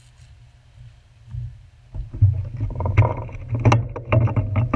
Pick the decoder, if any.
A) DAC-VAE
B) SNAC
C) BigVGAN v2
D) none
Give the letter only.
D